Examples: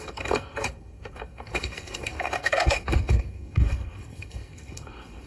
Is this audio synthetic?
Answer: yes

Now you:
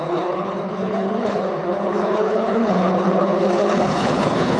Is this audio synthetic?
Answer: yes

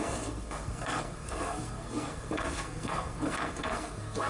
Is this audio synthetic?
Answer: yes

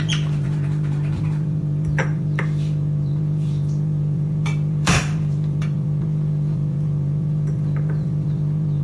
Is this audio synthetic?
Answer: yes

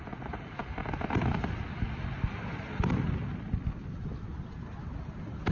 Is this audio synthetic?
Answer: no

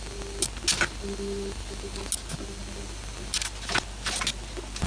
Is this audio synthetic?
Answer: no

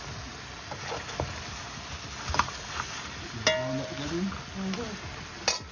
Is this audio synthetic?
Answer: no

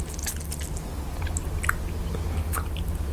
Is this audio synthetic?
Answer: no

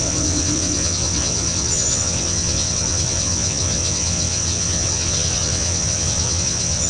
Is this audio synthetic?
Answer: yes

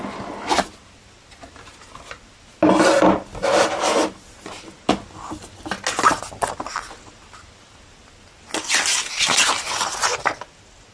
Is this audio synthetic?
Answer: no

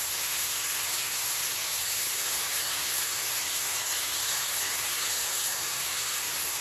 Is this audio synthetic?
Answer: yes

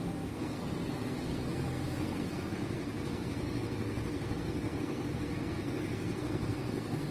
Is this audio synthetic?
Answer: yes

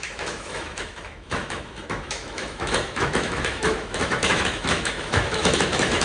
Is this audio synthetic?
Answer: yes